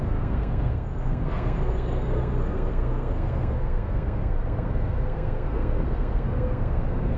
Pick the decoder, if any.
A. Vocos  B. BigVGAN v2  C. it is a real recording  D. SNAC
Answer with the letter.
D